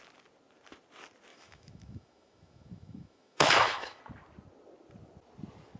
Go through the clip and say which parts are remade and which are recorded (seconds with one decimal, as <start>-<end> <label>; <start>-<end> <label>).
0.0-1.3 recorded; 1.3-4.0 remade; 4.0-5.8 recorded